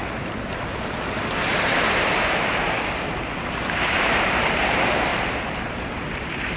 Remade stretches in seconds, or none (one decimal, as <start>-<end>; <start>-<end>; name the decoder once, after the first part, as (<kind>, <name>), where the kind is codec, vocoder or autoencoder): 0.0-6.6 (vocoder, BigVGAN v2)